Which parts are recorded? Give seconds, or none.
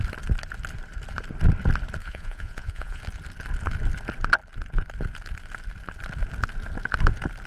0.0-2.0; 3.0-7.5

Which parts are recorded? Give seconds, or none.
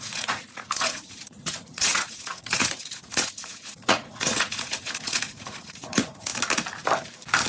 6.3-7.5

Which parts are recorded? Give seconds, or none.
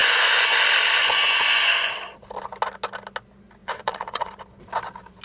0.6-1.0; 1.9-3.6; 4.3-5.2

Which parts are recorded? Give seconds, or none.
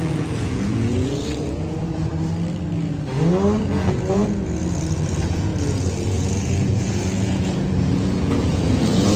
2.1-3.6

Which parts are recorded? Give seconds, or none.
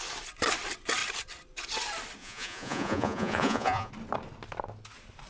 0.0-2.2; 3.9-5.3